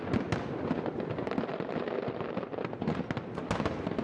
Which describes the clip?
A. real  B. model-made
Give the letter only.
A